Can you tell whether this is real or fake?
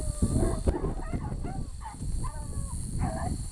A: real